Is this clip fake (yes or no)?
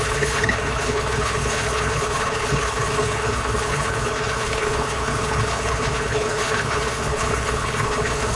yes